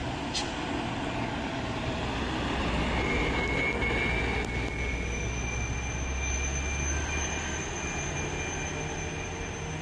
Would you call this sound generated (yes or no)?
no